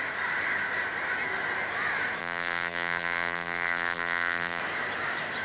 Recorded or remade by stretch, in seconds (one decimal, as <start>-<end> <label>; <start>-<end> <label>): 0.0-2.2 recorded; 2.2-4.6 remade; 4.6-5.4 recorded